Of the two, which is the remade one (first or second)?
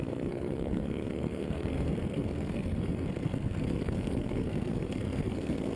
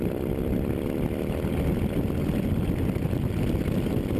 first